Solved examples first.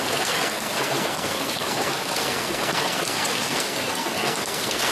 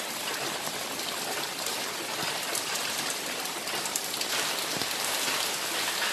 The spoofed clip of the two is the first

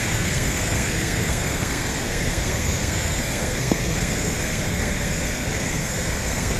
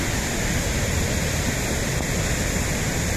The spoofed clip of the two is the first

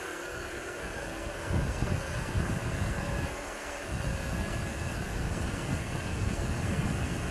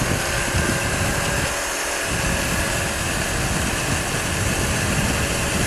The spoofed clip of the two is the first